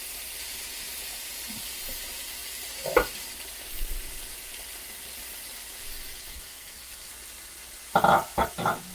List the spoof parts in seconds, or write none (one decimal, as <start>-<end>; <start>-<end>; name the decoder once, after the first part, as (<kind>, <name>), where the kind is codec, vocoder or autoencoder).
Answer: 6.3-7.1 (codec, SNAC)